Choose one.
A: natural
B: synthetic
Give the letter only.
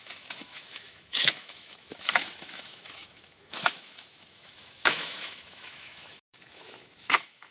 B